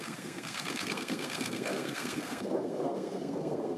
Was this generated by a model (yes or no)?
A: yes